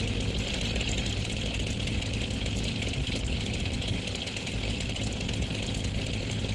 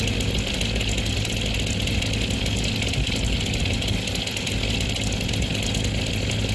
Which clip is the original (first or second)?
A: second